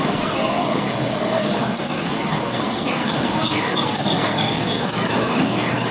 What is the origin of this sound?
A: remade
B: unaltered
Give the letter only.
A